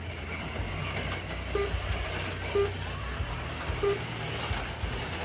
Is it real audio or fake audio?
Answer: real